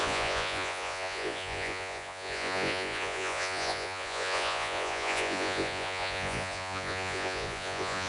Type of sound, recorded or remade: remade